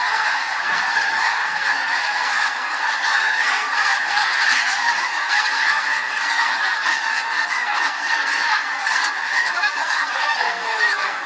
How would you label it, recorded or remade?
remade